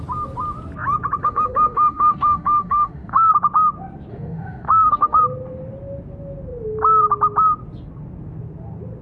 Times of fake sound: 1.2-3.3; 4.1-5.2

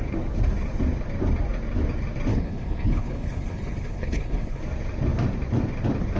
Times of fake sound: 2.3-4.6

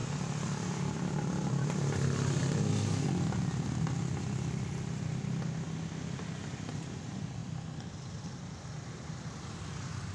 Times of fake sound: 0.0-2.4; 6.7-7.4; 8.2-10.1